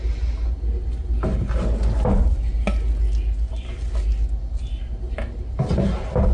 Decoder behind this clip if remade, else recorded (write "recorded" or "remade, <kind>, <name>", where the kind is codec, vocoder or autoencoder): recorded